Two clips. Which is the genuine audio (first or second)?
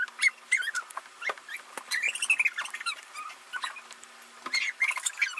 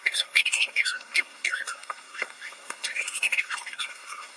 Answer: first